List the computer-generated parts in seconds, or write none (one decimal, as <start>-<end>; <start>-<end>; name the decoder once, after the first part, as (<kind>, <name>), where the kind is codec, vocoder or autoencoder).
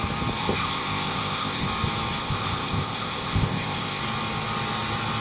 0.4-1.7 (codec, ZipCodec); 2.2-4.0